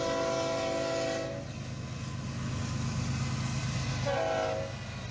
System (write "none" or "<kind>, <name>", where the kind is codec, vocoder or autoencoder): none